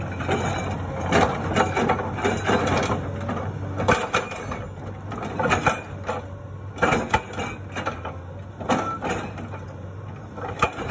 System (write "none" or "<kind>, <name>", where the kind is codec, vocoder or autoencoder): none